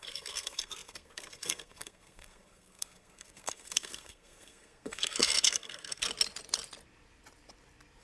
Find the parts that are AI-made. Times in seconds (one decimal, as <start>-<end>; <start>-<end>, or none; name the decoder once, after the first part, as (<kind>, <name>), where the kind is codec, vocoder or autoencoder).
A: 0.0-6.1 (codec, SNAC)